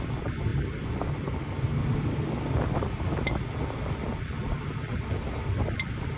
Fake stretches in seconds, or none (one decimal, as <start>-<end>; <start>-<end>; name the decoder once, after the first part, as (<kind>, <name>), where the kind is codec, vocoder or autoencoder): 0.0-0.5 (vocoder, BigVGAN v2); 2.2-6.2

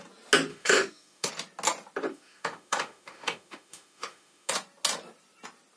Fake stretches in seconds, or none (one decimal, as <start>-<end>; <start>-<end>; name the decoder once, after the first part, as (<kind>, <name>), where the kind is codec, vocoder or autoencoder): 0.5-1.3 (autoencoder, DAC-VAE); 2.1-4.5

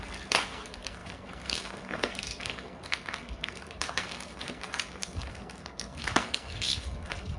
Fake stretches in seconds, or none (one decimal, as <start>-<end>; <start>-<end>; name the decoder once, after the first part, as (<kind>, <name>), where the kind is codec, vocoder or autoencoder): 0.0-7.4 (codec, SNAC)

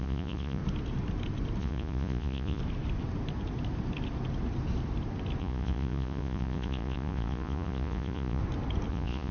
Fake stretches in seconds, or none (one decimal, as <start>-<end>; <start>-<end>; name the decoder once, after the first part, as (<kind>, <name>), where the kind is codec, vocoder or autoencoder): 0.0-0.6 (vocoder, Vocos); 1.6-2.6; 5.4-8.4; 8.9-9.3

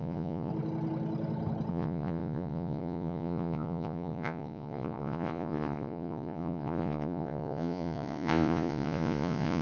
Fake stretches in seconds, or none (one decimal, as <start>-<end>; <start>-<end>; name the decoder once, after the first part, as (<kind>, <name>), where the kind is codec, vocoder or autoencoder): 0.0-0.5 (vocoder, Vocos); 1.7-9.6

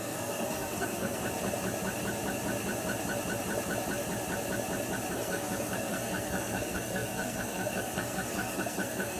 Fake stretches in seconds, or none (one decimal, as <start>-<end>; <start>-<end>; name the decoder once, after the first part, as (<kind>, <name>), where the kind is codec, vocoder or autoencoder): 0.0-1.2 (codec, SNAC); 5.1-9.2

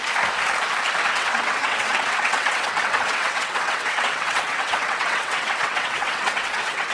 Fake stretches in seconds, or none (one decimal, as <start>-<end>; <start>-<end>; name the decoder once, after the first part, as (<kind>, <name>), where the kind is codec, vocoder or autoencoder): 1.0-6.9 (vocoder, WaveNeXt)